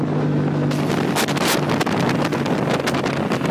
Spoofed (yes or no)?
no